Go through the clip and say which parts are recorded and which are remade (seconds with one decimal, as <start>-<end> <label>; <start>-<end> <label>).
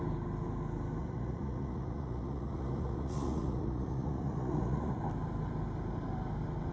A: 0.0-1.0 recorded; 1.0-5.0 remade; 5.0-6.7 recorded